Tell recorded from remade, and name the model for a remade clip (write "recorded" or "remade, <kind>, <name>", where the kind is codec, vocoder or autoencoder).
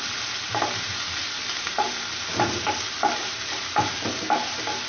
recorded